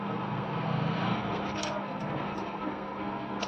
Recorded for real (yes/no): no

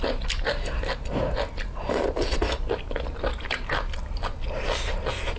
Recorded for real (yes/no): yes